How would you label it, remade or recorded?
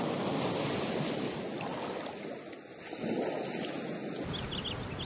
recorded